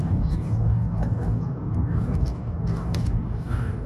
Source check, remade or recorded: remade